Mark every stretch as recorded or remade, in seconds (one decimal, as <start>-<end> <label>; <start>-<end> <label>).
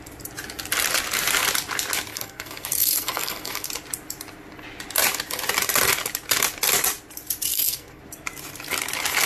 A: 0.0-2.1 recorded; 2.1-3.7 remade; 3.7-7.5 recorded; 7.5-8.0 remade; 8.0-9.3 recorded